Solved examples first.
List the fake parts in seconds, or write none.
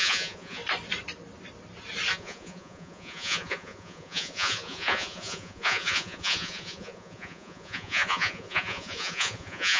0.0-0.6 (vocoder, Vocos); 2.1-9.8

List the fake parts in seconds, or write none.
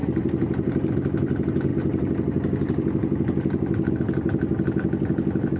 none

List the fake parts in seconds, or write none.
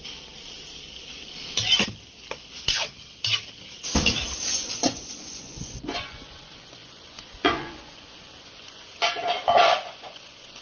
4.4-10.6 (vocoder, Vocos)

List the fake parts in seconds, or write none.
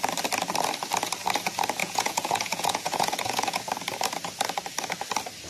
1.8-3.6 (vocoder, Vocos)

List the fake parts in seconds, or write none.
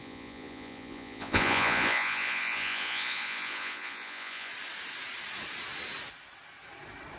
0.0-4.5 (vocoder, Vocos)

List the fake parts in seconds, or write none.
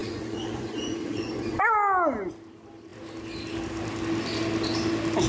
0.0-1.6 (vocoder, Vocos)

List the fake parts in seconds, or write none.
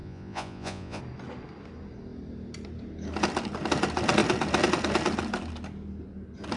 0.0-1.0 (vocoder, Vocos)